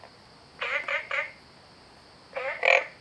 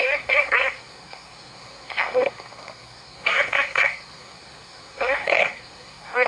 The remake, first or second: second